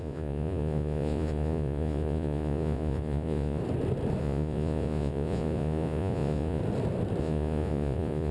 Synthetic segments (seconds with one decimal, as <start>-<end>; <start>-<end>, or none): 0.0-3.6; 4.2-6.6; 7.2-8.3